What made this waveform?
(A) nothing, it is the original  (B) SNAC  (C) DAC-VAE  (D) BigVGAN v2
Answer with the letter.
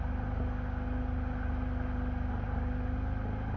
A